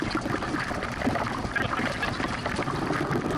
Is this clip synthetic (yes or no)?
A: no